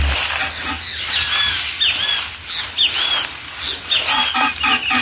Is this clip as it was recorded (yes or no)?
yes